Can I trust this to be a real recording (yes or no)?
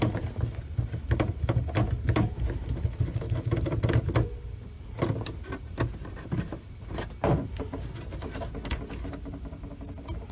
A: yes